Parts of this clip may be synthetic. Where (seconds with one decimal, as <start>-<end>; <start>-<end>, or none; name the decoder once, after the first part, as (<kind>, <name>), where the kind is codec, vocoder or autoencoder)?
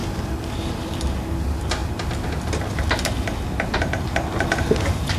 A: none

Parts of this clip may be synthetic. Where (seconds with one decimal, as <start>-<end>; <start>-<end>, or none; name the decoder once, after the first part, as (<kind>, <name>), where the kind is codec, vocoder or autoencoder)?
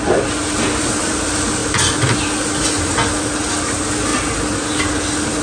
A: none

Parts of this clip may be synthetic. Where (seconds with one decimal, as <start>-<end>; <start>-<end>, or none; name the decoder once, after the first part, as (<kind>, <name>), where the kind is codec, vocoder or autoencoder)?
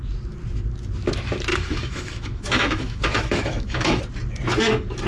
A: 1.5-4.0 (autoencoder, DAC-VAE)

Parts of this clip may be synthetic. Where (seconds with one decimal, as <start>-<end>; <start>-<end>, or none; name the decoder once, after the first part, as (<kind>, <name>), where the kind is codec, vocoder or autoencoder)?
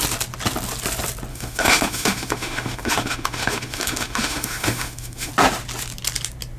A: 1.3-5.3 (autoencoder, DAC-VAE)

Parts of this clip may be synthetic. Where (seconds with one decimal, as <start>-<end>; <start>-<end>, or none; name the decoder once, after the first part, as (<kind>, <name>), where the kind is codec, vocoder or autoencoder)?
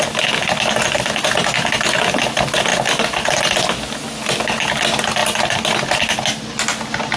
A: none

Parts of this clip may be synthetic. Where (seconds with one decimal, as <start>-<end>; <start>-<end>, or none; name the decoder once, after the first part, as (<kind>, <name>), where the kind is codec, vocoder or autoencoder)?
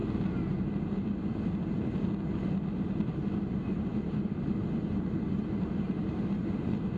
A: none